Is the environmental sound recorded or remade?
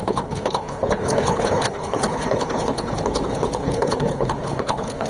remade